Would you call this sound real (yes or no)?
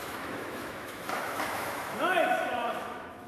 no